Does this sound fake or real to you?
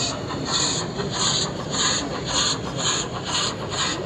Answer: real